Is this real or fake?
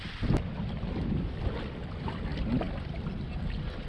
real